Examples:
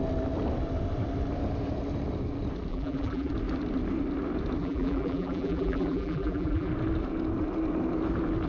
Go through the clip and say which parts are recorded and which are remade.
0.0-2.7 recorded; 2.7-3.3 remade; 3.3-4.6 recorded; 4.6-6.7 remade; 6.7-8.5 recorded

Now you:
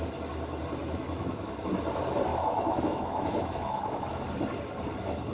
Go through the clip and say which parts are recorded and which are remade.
0.0-0.8 recorded; 0.8-1.7 remade; 1.7-2.3 recorded; 2.3-4.2 remade; 4.2-5.3 recorded